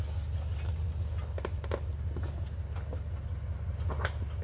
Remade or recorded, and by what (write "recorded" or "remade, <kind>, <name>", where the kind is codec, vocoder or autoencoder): recorded